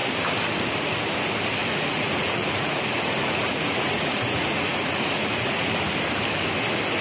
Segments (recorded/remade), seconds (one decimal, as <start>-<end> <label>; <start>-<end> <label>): 0.0-1.6 recorded; 1.6-5.8 remade; 5.8-7.0 recorded